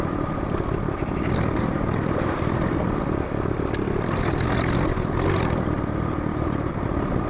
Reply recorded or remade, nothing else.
recorded